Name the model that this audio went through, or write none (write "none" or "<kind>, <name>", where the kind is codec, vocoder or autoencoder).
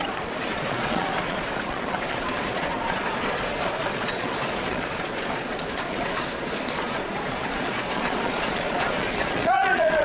vocoder, Vocos